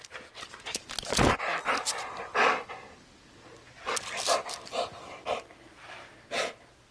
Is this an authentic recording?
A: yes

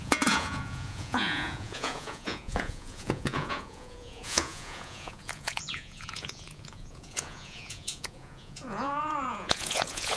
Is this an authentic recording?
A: no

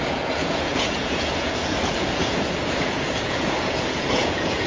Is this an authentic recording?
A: no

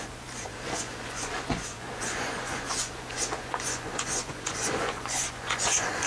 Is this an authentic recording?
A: no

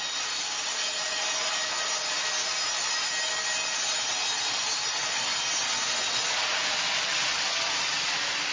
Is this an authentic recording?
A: yes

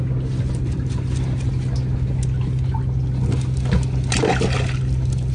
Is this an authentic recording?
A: yes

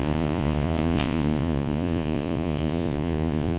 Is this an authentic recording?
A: no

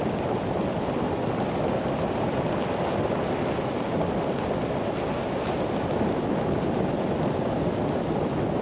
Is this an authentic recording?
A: yes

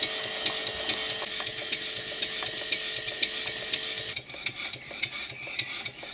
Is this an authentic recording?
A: yes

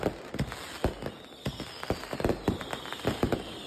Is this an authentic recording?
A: yes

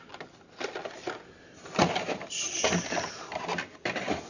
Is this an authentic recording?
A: yes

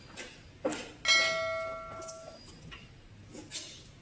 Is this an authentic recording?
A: yes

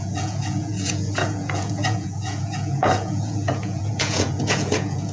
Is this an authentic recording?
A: no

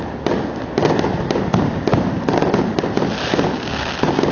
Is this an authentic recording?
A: yes